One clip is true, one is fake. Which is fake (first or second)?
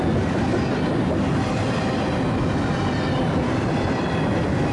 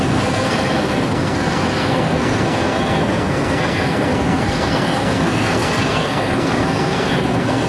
second